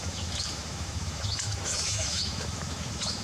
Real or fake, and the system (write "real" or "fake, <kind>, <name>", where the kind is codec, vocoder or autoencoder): fake, autoencoder, DAC-VAE